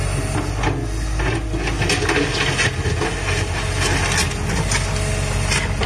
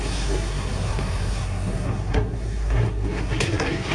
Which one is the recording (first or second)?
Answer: first